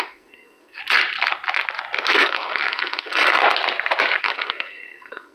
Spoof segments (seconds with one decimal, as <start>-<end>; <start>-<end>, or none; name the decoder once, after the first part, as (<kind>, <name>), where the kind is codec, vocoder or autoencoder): 0.0-0.8 (codec, SNAC); 2.1-3.4; 4.2-5.3